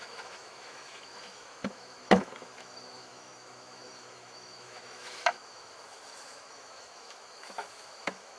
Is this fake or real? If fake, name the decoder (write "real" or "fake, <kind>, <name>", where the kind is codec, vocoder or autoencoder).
fake, autoencoder, DAC-VAE